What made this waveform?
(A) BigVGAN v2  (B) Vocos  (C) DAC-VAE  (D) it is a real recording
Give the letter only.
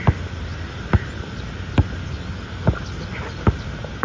D